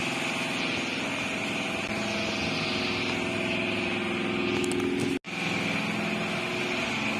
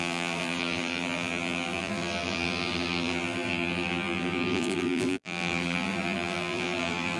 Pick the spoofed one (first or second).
second